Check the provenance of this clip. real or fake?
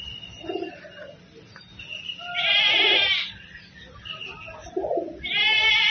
real